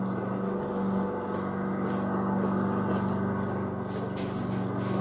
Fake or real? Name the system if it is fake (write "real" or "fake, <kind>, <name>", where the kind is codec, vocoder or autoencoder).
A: real